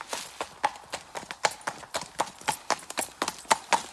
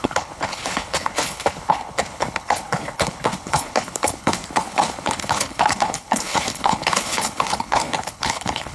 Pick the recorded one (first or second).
first